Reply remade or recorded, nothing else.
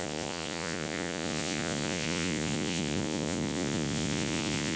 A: remade